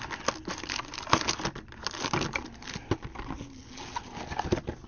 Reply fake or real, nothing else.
real